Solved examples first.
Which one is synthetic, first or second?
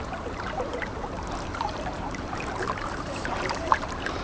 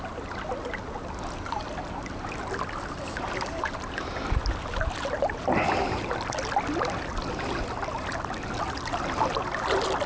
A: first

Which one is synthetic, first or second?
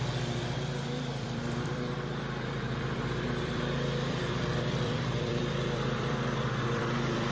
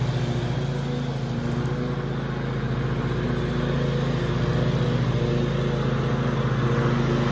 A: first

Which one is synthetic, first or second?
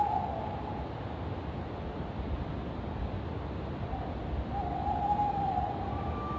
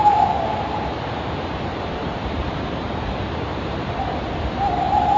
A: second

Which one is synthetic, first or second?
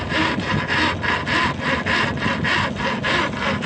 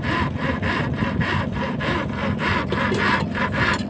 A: second